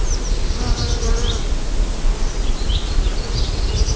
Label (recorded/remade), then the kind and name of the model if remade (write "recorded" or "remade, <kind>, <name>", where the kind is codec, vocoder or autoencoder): recorded